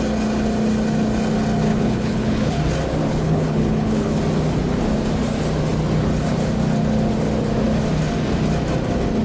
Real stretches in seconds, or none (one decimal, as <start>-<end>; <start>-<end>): 0.0-1.7; 2.6-3.1; 4.2-9.2